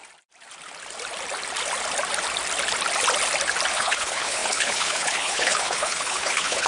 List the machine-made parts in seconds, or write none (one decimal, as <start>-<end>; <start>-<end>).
3.7-6.7